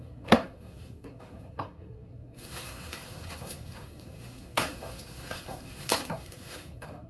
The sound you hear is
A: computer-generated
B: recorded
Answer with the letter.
A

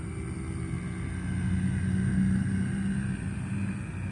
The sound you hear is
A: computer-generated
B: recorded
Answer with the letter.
B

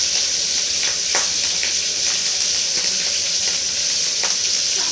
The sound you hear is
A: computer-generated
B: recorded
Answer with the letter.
B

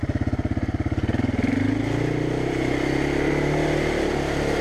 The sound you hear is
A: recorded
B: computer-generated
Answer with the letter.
A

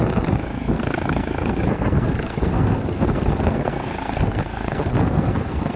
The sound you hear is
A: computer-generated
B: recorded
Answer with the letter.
A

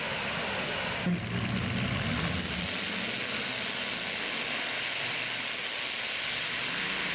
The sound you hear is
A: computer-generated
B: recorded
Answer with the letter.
B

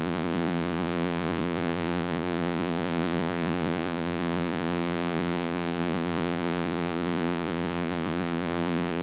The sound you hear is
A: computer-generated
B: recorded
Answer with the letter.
A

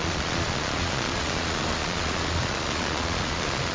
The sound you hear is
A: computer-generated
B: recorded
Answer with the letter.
A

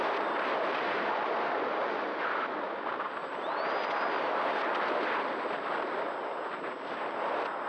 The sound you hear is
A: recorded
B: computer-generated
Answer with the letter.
A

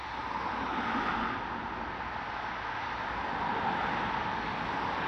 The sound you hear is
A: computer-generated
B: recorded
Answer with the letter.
B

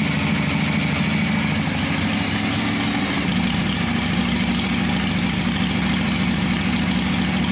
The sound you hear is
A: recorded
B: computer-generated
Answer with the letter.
A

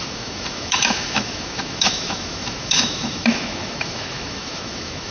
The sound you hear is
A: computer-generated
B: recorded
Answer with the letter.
A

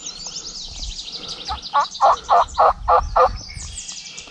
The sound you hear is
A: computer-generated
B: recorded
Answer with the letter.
B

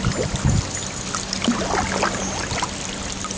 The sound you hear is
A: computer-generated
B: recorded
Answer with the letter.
B